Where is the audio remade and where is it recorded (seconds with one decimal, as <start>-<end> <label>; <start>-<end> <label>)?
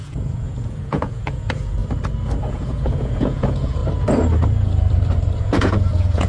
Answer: 0.0-1.8 remade; 1.8-2.5 recorded; 2.5-3.8 remade; 3.8-5.4 recorded; 5.4-6.3 remade